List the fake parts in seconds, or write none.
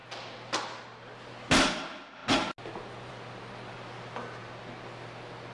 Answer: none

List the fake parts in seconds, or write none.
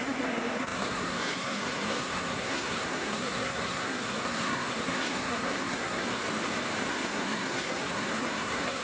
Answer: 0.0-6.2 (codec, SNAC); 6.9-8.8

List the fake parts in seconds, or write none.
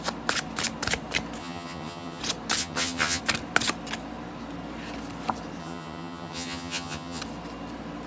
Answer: 1.4-2.2 (vocoder, HiFi-GAN); 2.6-3.2; 5.6-7.2